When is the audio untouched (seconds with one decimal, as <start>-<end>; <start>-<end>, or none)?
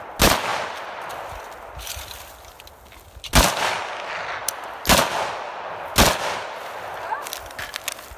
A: 0.0-8.2